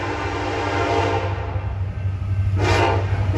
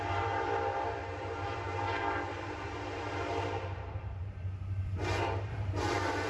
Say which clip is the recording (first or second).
first